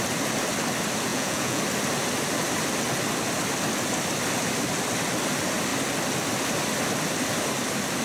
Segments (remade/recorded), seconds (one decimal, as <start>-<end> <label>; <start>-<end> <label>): 0.0-1.1 recorded; 1.1-1.6 remade; 1.6-8.0 recorded